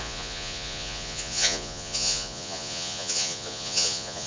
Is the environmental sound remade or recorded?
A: remade